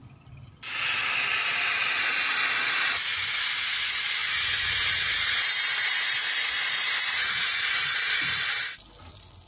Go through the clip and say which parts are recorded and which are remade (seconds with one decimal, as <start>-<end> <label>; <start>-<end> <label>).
0.0-4.2 recorded; 4.2-8.6 remade; 8.6-9.5 recorded